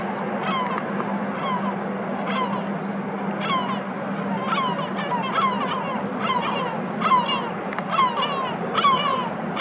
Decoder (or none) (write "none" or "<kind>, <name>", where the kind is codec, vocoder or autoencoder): none